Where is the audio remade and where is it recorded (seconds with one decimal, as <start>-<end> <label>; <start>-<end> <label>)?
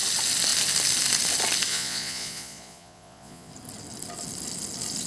0.0-1.7 recorded; 1.7-3.5 remade; 3.5-5.1 recorded